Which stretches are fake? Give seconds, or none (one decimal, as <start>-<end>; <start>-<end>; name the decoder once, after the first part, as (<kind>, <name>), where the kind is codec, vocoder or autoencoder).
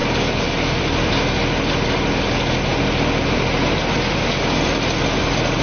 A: none